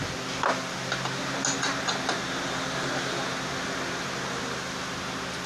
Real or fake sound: real